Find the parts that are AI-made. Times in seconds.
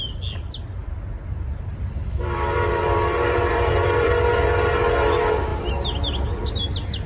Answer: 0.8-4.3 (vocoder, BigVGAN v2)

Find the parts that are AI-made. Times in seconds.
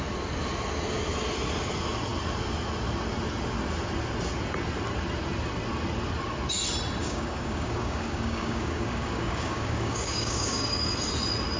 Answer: 7.0-10.9 (codec, DAC)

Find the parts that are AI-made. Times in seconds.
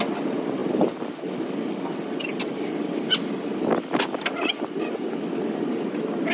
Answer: 0.6-2.7 (vocoder, BigVGAN v2)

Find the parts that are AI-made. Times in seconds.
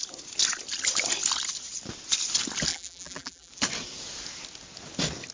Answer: 2.7-3.5 (vocoder, BigVGAN v2)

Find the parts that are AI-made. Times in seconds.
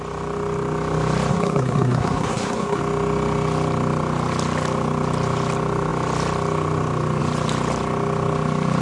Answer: 1.3-2.8 (codec, SNAC)